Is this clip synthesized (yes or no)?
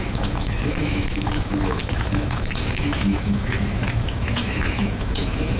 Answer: yes